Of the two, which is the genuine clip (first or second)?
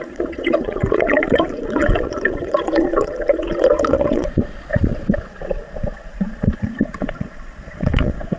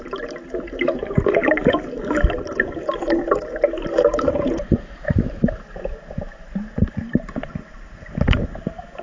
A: second